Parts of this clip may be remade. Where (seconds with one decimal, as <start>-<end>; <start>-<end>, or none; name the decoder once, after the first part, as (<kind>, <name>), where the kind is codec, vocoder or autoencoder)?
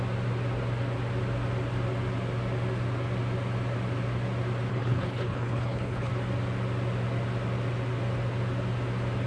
4.7-6.1 (codec, HILCodec)